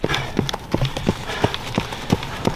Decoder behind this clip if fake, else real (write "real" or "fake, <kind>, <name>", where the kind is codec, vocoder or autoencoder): real